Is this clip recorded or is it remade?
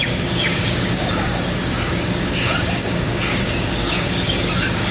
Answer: remade